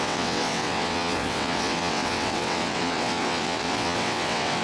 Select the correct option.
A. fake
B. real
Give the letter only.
A